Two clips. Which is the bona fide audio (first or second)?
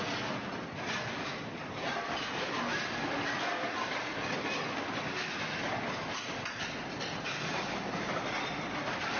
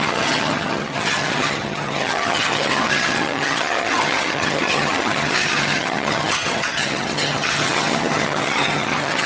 first